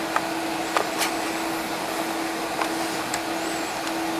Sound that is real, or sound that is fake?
real